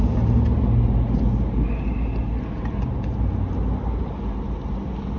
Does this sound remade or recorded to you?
recorded